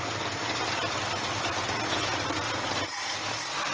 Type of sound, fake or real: real